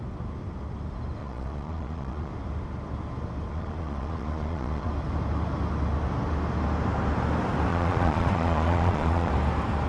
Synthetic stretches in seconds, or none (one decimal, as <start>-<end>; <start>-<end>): 1.2-2.3; 3.5-4.9; 7.7-9.3